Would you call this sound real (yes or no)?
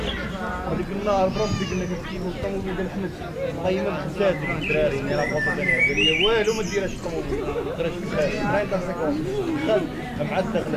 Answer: yes